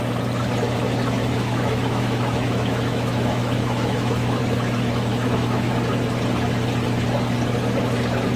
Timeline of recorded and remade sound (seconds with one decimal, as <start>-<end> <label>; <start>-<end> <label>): 0.0-1.2 recorded; 1.2-4.4 remade; 4.4-5.1 recorded; 5.1-5.7 remade; 5.7-8.4 recorded